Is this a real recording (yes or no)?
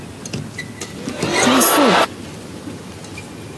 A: yes